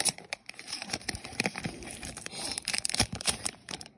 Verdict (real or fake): fake